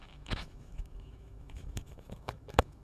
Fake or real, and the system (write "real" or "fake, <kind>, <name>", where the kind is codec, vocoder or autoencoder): fake, autoencoder, DAC-VAE